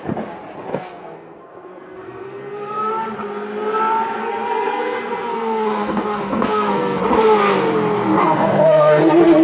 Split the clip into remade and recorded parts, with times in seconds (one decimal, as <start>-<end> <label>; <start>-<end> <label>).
0.0-0.7 recorded; 0.7-2.9 remade; 2.9-4.2 recorded; 4.2-7.0 remade; 7.0-8.2 recorded; 8.2-9.0 remade; 9.0-9.4 recorded